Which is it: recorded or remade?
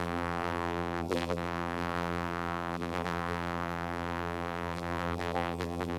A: remade